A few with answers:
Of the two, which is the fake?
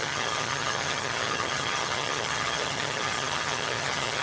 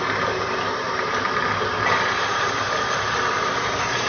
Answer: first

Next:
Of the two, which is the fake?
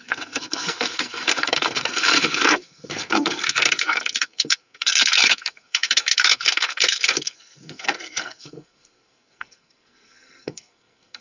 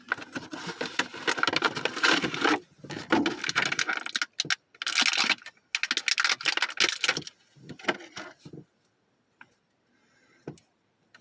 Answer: first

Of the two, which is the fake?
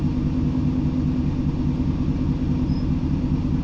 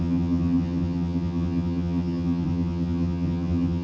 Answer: second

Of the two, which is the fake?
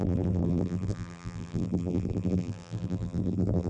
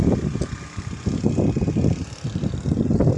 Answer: first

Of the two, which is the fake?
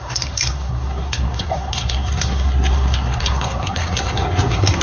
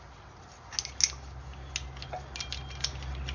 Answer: first